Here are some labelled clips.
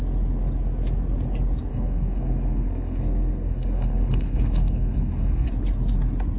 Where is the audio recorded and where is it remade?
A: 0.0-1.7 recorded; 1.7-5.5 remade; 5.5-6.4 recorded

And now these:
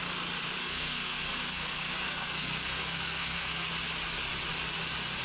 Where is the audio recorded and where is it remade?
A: 0.0-0.6 recorded; 0.6-3.7 remade; 3.7-5.2 recorded

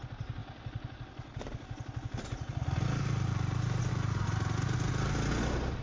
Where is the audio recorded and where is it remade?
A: 0.0-5.8 recorded

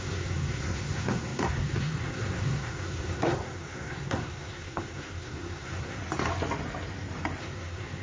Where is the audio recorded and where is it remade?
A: 0.0-6.0 remade; 6.0-7.4 recorded; 7.4-8.0 remade

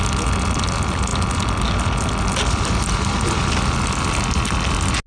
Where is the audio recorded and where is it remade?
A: 0.0-5.1 recorded

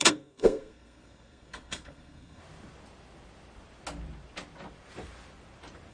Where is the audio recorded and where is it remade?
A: 0.0-2.4 remade; 2.4-5.9 recorded

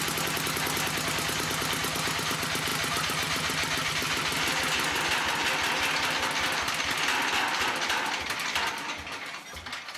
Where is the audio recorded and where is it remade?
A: 0.0-10.0 recorded